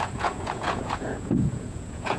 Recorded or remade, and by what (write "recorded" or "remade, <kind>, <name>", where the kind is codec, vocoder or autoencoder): remade, vocoder, Vocos